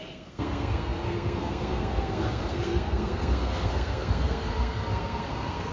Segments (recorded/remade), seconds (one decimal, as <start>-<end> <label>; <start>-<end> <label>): 0.0-5.7 remade